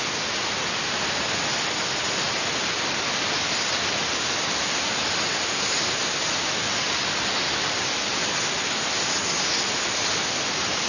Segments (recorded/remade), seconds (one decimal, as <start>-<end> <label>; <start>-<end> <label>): 0.0-10.9 recorded